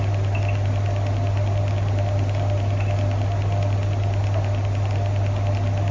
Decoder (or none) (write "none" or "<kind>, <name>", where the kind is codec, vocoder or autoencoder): none